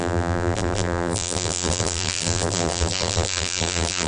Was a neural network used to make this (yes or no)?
yes